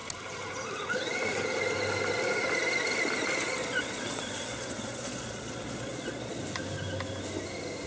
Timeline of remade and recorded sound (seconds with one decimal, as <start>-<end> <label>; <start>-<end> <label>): 0.0-3.4 recorded; 3.4-6.4 remade; 6.4-7.9 recorded